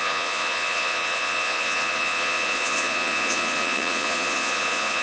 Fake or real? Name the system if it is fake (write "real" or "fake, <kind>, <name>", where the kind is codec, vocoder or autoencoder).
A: fake, vocoder, Vocos